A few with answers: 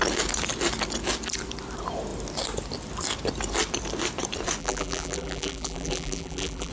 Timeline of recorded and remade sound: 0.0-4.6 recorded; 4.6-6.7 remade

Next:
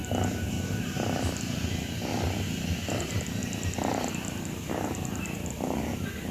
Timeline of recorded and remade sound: 0.0-0.8 recorded; 0.8-2.1 remade; 2.1-2.7 recorded; 2.7-6.3 remade